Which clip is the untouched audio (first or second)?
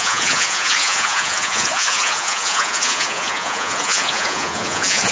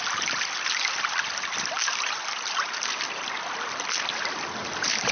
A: second